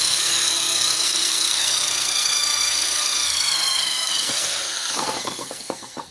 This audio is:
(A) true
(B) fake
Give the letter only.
B